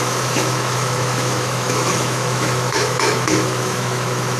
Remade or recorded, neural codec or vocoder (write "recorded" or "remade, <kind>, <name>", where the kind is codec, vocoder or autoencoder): remade, autoencoder, DAC-VAE